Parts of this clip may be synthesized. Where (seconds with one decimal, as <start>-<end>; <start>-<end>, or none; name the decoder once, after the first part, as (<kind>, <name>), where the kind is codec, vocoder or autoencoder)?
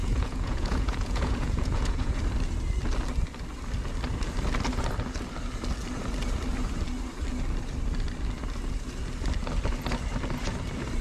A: 0.0-2.2 (vocoder, Vocos)